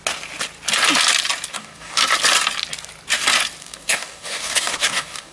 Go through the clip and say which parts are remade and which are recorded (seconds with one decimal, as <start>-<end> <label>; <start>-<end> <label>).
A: 0.0-1.5 recorded; 1.5-2.0 remade; 2.0-3.6 recorded; 3.6-5.3 remade